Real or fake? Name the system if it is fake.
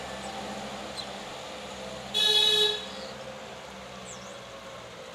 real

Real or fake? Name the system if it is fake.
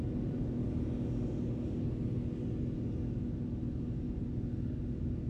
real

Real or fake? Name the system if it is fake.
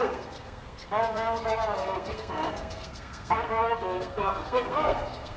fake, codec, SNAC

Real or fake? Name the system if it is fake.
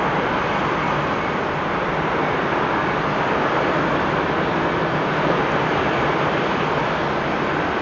real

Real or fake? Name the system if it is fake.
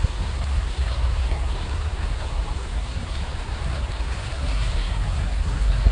fake, codec, SNAC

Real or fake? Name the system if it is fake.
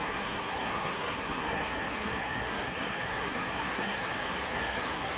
fake, codec, SNAC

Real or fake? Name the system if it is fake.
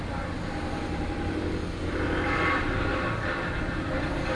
real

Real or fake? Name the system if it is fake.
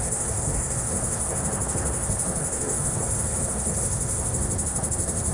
fake, codec, SNAC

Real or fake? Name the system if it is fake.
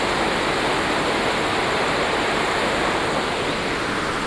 real